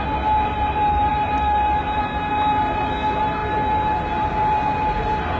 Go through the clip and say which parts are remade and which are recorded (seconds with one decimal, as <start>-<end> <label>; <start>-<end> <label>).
0.0-5.4 recorded